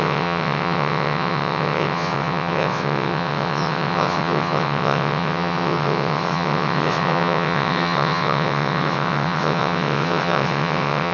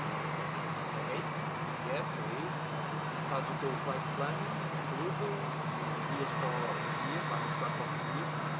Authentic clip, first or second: second